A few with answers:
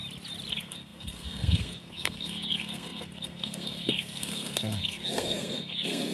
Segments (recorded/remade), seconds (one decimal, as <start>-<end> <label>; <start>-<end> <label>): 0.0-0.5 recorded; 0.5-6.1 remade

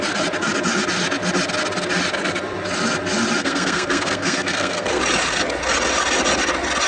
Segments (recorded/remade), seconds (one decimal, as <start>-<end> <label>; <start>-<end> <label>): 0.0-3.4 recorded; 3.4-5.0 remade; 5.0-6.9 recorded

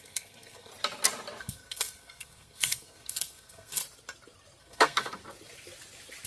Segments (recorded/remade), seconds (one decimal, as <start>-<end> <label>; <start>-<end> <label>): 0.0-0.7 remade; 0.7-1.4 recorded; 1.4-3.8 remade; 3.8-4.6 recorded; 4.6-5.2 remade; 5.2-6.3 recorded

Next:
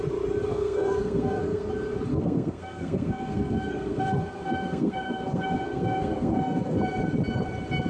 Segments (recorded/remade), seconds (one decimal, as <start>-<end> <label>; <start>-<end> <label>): 0.0-0.5 recorded; 0.5-1.7 remade; 1.7-2.1 recorded; 2.1-6.8 remade; 6.8-7.9 recorded

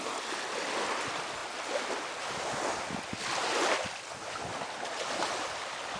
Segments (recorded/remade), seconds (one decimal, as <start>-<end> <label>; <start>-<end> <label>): 0.0-6.0 recorded

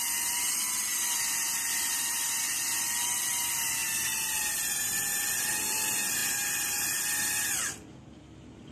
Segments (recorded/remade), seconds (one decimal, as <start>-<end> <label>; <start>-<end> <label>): 0.0-8.7 recorded

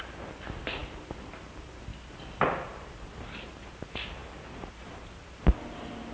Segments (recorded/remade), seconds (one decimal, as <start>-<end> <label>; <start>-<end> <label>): 0.0-6.1 recorded

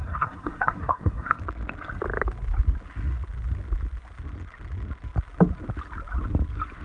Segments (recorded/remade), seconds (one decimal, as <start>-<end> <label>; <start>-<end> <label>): 0.0-1.4 remade; 1.4-6.8 recorded